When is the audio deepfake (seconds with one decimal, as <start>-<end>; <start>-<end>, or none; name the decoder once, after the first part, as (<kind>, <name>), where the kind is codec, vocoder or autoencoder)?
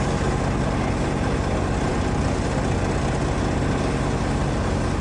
none